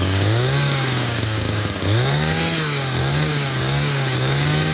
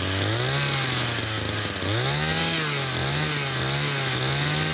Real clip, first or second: second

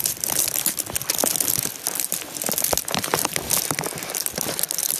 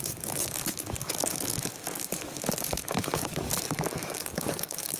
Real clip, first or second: first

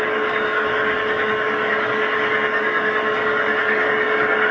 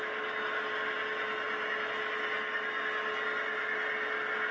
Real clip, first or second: second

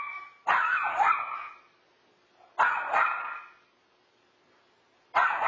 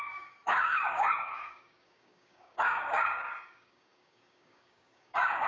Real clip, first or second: first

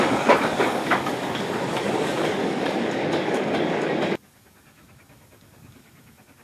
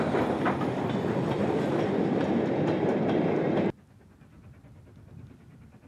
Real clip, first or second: second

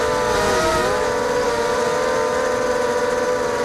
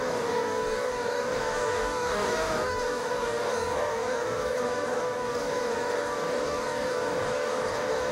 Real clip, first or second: first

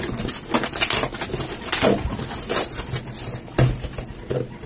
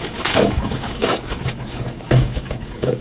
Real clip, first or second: first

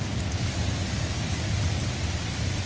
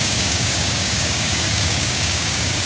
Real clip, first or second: first